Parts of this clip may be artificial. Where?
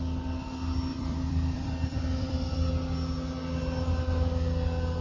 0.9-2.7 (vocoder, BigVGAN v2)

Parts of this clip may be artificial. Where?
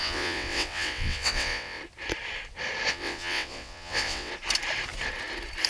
0.0-1.8 (vocoder, WaveNeXt); 2.9-4.3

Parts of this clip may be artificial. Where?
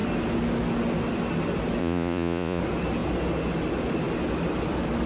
1.8-2.6 (vocoder, Vocos)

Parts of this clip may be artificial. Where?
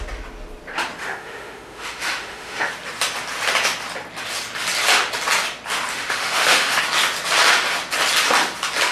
1.0-2.7 (autoencoder, DAC-VAE); 5.9-6.8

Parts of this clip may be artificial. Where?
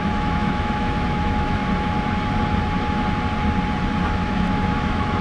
0.0-1.6 (autoencoder, DAC-VAE); 4.1-5.2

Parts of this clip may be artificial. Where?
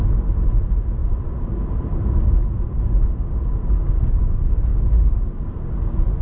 1.0-4.2 (vocoder, BigVGAN v2); 4.7-5.6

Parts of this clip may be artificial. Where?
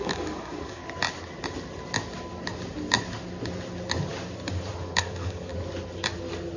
0.0-0.8 (codec, DAC); 4.8-5.5